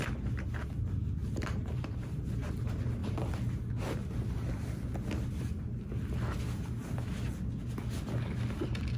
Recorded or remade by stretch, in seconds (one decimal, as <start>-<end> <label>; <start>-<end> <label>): 0.0-1.2 recorded; 1.2-2.3 remade; 2.3-9.0 recorded